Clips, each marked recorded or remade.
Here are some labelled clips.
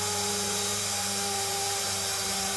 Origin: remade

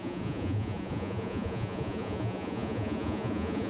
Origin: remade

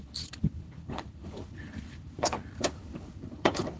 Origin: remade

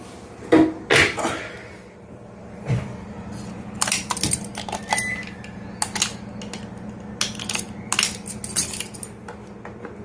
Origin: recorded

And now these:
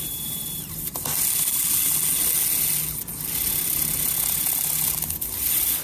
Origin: recorded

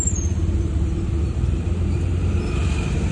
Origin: recorded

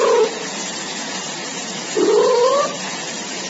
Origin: remade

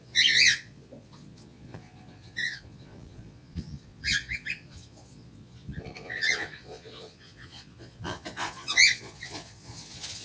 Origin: remade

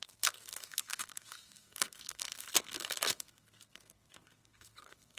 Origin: remade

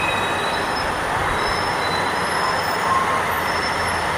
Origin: recorded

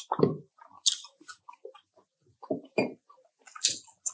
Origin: recorded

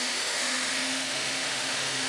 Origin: remade